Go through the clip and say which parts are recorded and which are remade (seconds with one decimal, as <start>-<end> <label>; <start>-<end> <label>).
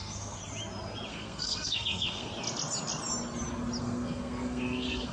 0.0-0.4 remade; 0.4-1.1 recorded; 1.1-2.3 remade; 2.3-3.8 recorded; 3.8-5.1 remade